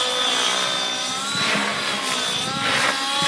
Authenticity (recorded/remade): recorded